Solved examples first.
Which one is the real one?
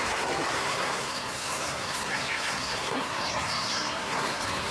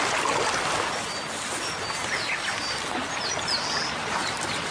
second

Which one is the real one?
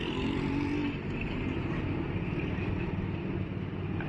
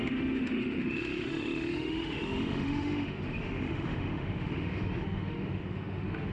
first